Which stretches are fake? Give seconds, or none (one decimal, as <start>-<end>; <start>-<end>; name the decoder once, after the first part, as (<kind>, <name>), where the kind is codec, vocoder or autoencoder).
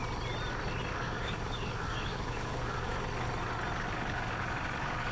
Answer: 0.9-2.9 (codec, DAC); 3.8-5.1